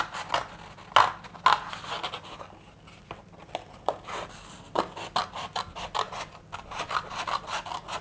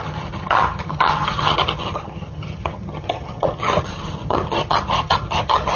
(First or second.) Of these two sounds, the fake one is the second